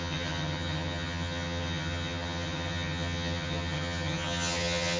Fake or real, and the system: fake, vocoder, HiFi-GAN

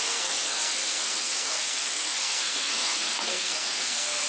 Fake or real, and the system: fake, codec, SNAC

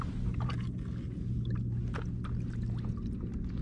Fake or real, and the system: real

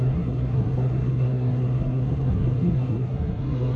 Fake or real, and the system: fake, codec, SNAC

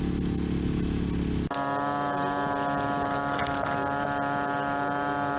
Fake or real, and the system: real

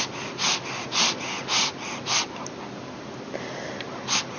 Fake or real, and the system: real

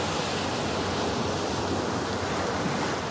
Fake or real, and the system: real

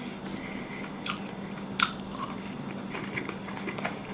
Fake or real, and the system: real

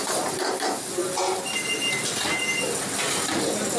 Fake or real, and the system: real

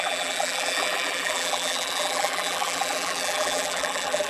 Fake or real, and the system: fake, vocoder, BigVGAN v2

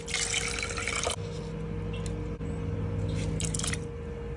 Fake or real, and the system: real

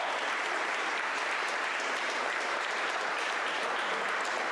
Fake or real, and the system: fake, vocoder, BigVGAN v2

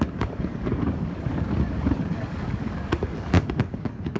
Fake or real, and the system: fake, codec, DAC